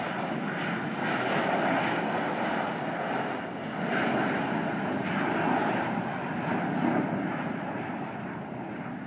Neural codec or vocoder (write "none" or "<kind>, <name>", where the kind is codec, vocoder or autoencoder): none